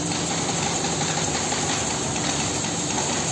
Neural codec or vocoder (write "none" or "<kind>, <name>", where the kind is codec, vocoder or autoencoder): none